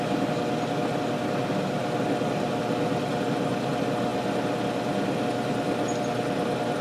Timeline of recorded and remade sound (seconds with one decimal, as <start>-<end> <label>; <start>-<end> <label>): 0.0-6.8 recorded